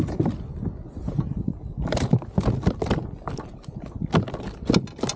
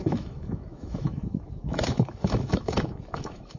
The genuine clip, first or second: first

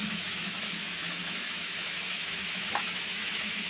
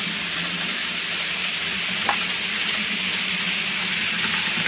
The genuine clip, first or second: second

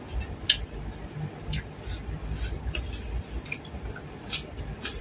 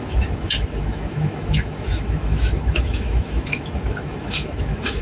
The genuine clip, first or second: first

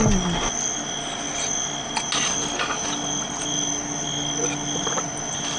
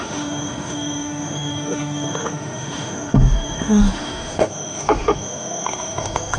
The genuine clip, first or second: first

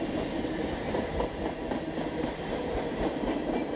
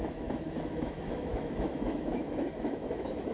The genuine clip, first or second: first